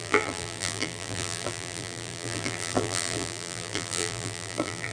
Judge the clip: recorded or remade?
remade